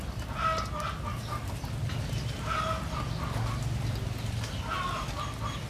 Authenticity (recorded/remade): recorded